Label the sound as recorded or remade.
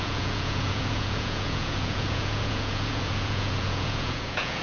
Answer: remade